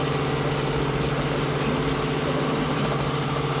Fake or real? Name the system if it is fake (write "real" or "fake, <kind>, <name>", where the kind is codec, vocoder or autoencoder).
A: real